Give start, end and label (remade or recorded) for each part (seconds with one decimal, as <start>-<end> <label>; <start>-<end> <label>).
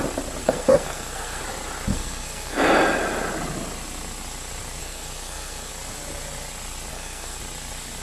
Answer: 0.0-0.4 recorded; 0.4-1.4 remade; 1.4-1.9 recorded; 1.9-2.7 remade; 2.7-4.8 recorded; 4.8-5.7 remade; 5.7-6.9 recorded; 6.9-7.4 remade; 7.4-8.0 recorded